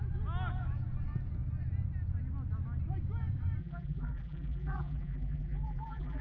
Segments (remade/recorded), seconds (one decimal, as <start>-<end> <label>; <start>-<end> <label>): 0.0-3.6 recorded; 3.6-6.2 remade